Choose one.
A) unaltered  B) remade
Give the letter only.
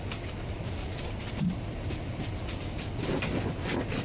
A